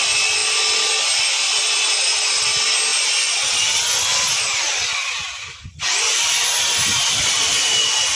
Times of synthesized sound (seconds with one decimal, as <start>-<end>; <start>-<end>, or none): none